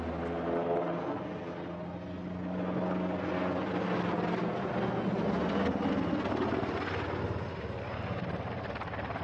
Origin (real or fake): real